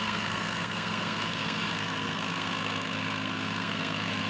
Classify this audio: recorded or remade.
remade